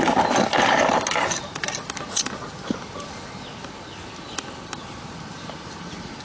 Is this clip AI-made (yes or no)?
no